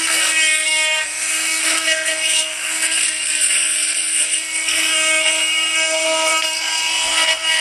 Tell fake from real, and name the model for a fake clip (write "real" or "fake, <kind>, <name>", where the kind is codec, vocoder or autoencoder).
fake, codec, SNAC